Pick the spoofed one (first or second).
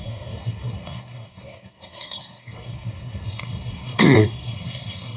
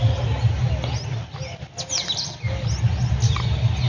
first